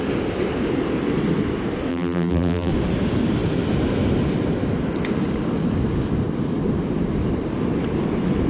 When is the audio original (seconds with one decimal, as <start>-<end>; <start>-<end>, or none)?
0.0-1.9; 2.7-8.5